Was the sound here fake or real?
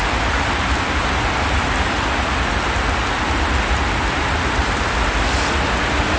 real